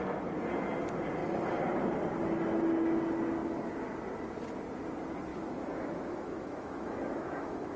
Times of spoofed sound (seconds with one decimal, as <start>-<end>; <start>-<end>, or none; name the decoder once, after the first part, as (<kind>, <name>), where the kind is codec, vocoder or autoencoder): 5.3-7.8 (autoencoder, DAC-VAE)